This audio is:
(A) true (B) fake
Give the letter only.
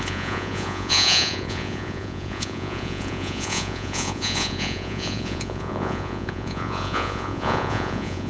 B